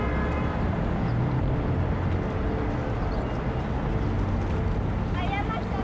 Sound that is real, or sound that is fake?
real